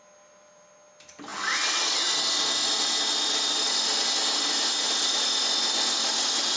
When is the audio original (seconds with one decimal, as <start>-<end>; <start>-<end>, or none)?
0.0-6.6